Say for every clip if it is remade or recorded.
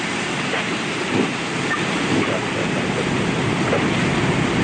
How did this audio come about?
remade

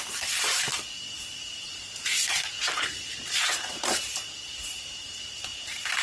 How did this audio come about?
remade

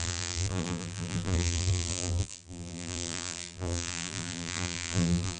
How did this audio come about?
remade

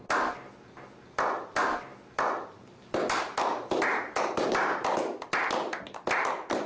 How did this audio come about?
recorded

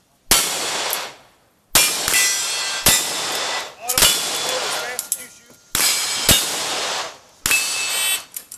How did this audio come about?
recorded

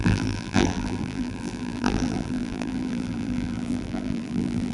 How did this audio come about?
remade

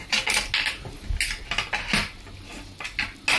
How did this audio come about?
recorded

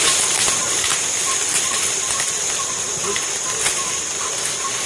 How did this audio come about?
recorded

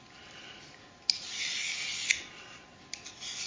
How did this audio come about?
recorded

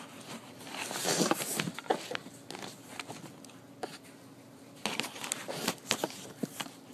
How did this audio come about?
recorded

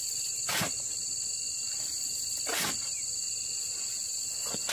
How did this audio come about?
recorded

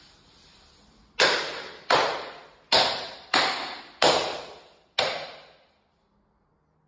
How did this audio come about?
recorded